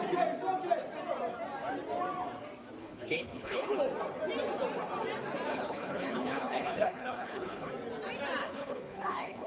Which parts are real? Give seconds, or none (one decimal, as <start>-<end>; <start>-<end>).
0.0-2.8; 3.8-5.5; 7.7-8.4